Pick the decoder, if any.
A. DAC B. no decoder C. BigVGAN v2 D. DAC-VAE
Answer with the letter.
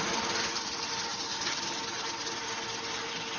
B